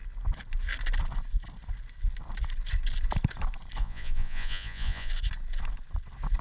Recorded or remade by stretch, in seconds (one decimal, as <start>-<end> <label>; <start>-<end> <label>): 0.0-3.8 recorded; 3.8-5.1 remade; 5.1-6.4 recorded